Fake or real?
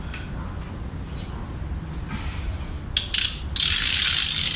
real